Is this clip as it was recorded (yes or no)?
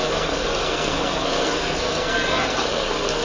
no